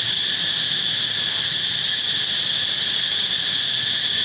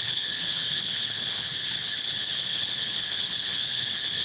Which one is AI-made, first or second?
second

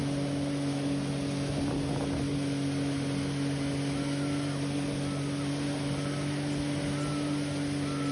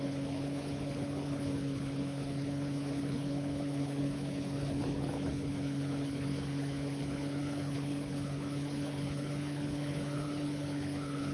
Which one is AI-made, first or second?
second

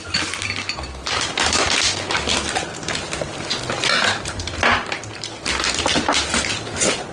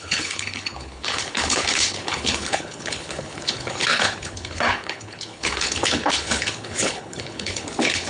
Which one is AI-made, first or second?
second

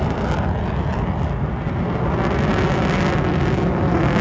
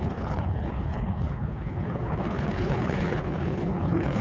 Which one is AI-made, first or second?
second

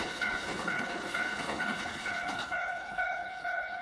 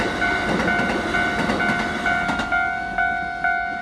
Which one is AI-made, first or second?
first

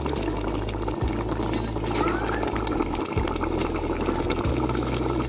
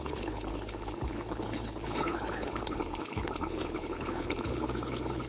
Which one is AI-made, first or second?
second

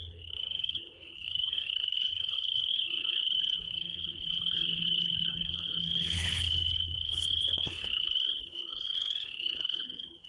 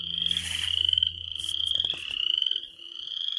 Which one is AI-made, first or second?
first